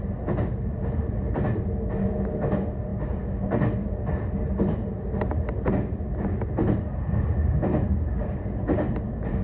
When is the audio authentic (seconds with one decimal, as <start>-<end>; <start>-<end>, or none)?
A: 0.0-9.4